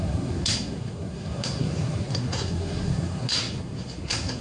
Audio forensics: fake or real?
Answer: fake